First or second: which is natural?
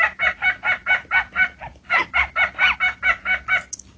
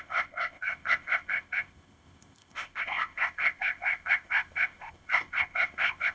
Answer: first